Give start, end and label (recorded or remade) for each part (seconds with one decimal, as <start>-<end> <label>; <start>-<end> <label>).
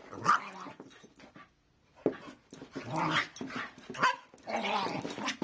0.0-5.4 recorded